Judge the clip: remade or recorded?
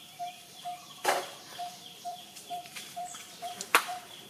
remade